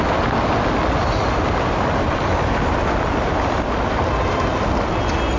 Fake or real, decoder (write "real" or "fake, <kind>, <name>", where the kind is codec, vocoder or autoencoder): real